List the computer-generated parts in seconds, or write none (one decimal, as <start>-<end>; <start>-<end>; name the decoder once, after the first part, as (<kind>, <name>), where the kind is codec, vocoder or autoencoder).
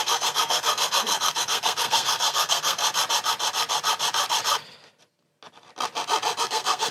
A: 0.0-2.8 (codec, SNAC); 6.4-6.9